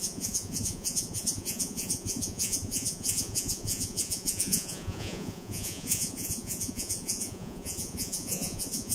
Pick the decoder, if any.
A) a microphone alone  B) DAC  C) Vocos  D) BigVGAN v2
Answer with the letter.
C